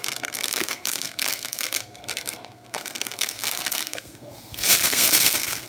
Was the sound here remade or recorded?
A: remade